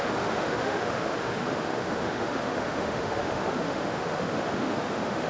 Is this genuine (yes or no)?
no